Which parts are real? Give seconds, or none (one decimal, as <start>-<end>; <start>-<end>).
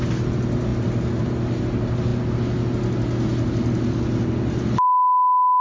0.0-5.6